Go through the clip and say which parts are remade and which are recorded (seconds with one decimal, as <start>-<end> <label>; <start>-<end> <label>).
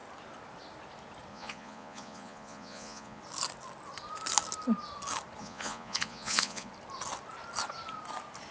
0.0-1.3 recorded; 1.3-3.2 remade; 3.2-5.4 recorded; 5.4-6.7 remade; 6.7-8.5 recorded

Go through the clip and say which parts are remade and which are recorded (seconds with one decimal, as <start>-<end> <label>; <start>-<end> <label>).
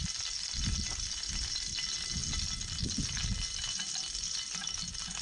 0.0-0.8 remade; 0.8-2.2 recorded; 2.2-3.3 remade; 3.3-5.2 recorded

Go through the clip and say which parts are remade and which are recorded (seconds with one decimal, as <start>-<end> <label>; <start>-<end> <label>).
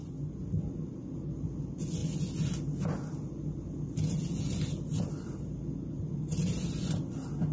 0.0-7.5 recorded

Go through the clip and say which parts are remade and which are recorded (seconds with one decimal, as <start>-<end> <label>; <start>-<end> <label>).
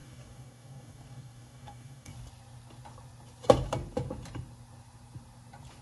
0.0-2.1 remade; 2.1-5.8 recorded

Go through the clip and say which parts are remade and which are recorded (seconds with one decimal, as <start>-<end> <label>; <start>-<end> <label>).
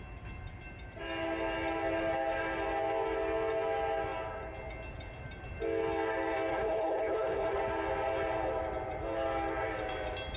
0.0-6.5 recorded; 6.5-7.6 remade; 7.6-10.4 recorded